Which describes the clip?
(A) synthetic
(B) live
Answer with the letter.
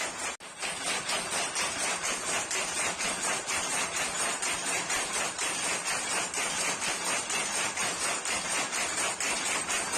B